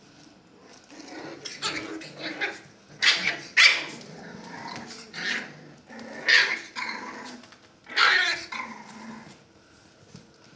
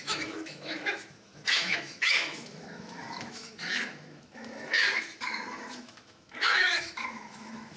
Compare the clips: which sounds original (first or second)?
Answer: first